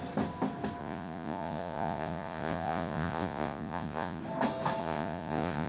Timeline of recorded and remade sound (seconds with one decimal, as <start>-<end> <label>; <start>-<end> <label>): 0.0-0.8 recorded; 0.8-4.2 remade; 4.2-4.8 recorded; 4.8-5.7 remade